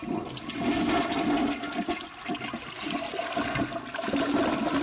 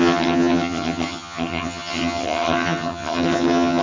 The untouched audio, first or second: first